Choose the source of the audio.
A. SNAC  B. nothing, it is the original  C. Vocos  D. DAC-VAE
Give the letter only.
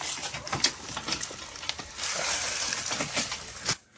B